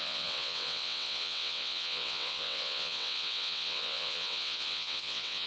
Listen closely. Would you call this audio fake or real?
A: fake